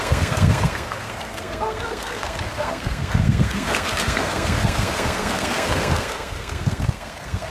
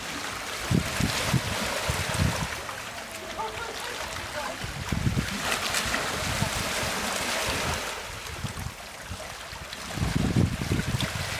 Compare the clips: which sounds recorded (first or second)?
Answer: second